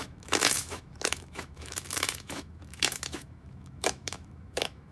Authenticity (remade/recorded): remade